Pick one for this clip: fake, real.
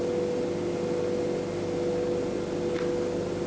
real